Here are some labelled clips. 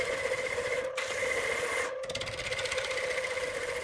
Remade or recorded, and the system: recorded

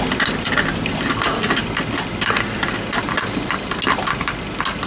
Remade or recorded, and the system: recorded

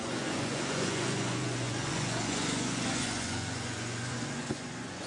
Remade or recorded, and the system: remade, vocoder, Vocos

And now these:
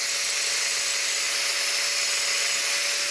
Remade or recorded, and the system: recorded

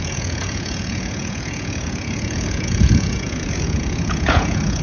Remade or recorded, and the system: remade, vocoder, Vocos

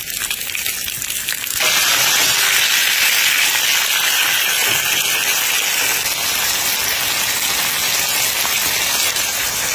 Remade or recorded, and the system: recorded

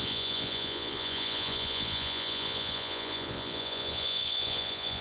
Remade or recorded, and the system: remade, vocoder, Vocos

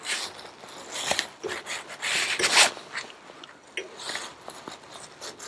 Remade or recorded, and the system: recorded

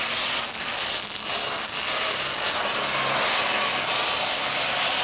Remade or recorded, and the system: recorded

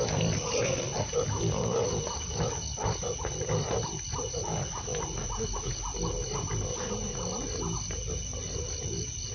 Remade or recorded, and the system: recorded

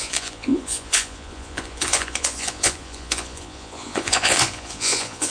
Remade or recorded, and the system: remade, vocoder, Vocos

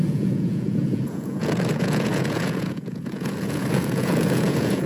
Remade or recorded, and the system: remade, vocoder, Vocos